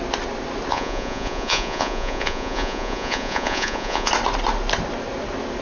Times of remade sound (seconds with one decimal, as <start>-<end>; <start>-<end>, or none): 0.7-4.1

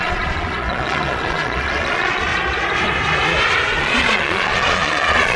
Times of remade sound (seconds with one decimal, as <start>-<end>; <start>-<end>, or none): 0.0-2.3; 3.8-5.4